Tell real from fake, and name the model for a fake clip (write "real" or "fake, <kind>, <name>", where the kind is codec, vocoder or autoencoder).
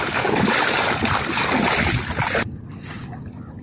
real